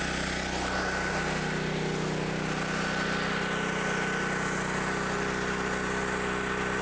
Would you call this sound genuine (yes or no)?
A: yes